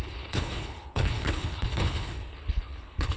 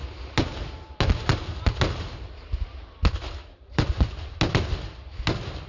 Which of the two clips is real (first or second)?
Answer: second